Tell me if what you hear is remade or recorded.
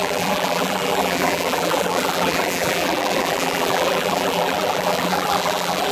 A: remade